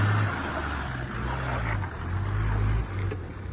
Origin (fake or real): real